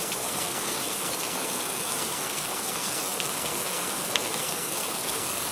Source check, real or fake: fake